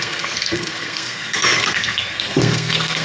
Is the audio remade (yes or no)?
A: yes